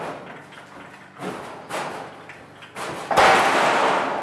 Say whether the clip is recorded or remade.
recorded